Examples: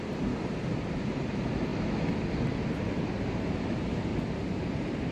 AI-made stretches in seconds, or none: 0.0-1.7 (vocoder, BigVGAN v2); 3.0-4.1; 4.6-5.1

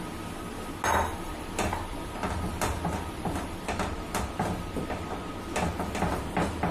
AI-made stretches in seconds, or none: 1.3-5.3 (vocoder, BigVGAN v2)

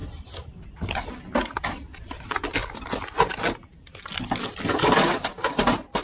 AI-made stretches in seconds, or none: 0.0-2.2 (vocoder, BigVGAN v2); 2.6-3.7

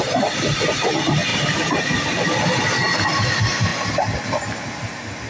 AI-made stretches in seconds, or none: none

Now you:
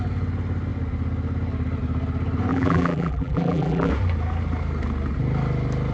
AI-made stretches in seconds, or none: 2.5-3.9 (vocoder, BigVGAN v2)

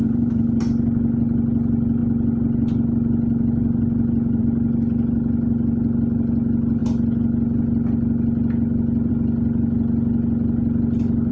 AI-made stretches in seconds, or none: 0.0-0.6 (vocoder, BigVGAN v2)